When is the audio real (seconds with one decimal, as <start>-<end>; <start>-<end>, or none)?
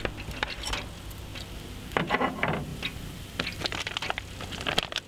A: 0.0-5.1